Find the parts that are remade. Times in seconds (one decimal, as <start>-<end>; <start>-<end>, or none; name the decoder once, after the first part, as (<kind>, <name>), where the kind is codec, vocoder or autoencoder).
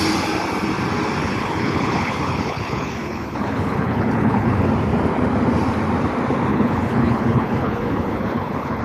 1.2-4.7 (codec, HILCodec); 6.5-8.8